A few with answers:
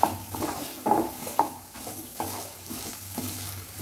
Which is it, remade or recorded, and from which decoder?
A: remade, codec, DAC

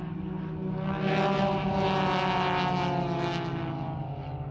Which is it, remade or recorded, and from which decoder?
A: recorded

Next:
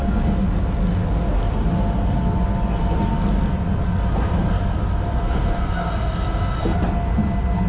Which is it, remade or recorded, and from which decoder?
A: recorded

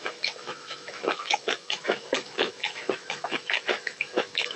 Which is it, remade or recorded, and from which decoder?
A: remade, autoencoder, DAC-VAE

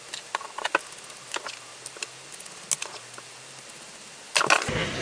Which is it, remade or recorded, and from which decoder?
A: recorded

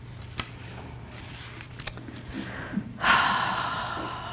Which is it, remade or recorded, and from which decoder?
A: recorded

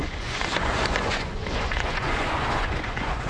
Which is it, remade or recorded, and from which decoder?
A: remade, vocoder, Vocos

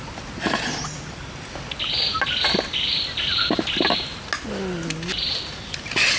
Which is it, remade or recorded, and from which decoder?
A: recorded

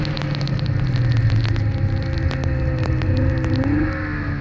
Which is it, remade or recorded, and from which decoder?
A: recorded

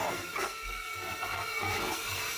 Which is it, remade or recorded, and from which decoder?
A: remade, codec, SNAC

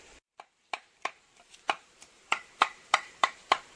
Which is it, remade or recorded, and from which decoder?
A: remade, vocoder, BigVGAN v2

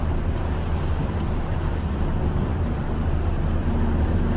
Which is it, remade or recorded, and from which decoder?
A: remade, vocoder, BigVGAN v2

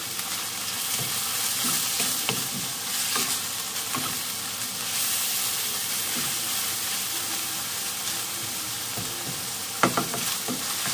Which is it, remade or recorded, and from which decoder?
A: recorded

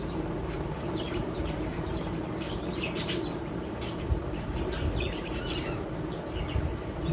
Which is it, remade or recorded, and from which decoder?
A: remade, vocoder, BigVGAN v2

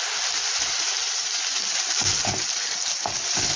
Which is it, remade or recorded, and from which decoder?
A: recorded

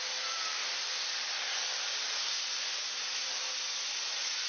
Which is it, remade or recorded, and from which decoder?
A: recorded